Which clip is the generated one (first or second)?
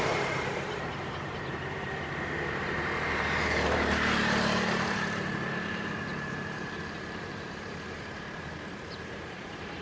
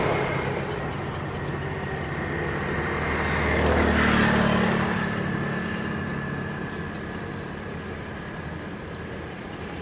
first